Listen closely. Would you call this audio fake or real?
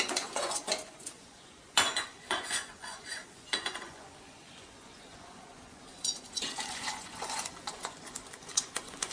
fake